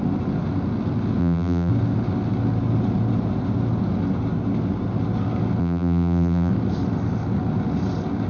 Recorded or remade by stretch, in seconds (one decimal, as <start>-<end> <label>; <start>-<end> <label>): 0.0-1.2 recorded; 1.2-1.7 remade; 1.7-5.6 recorded; 5.6-6.5 remade; 6.5-8.3 recorded